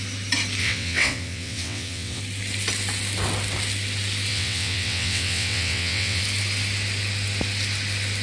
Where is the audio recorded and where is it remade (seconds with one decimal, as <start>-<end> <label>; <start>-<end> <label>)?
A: 0.0-0.6 recorded; 0.6-2.2 remade; 2.2-4.3 recorded; 4.3-6.2 remade; 6.2-8.2 recorded